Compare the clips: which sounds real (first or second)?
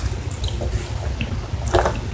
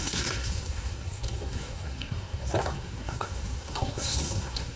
first